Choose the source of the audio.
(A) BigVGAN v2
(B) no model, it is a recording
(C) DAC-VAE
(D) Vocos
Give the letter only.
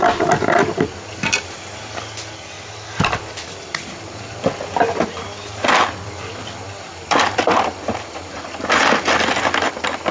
B